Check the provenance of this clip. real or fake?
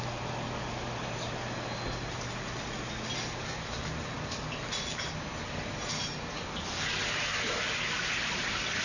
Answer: real